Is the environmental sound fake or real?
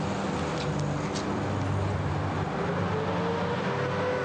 real